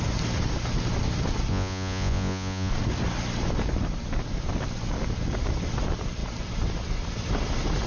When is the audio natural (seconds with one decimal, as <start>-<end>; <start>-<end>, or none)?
0.0-1.5; 2.7-7.9